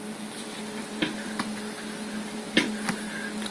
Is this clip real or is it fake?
real